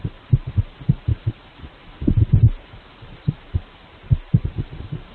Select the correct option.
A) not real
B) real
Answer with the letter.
B